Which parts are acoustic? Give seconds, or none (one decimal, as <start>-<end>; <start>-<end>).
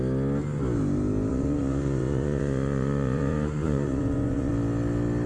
0.0-1.3; 4.5-5.3